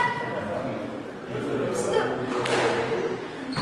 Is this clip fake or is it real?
real